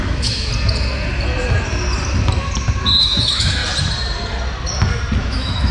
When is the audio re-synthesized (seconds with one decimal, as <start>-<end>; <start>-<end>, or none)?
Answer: 0.0-0.5; 3.0-3.6; 5.2-5.7